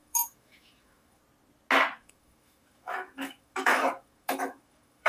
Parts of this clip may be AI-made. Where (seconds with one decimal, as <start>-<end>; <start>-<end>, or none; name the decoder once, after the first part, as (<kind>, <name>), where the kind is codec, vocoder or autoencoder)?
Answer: 0.0-1.2 (autoencoder, DAC-VAE); 2.0-5.1